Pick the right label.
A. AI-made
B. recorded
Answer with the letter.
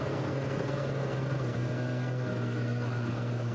A